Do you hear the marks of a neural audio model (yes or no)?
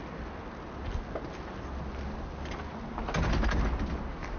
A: no